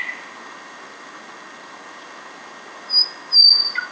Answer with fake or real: real